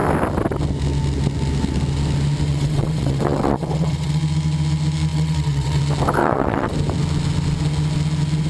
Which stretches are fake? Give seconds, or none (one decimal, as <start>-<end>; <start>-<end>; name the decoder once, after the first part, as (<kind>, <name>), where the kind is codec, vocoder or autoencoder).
2.5-4.2 (vocoder, WaveNeXt); 5.1-5.8; 6.2-6.7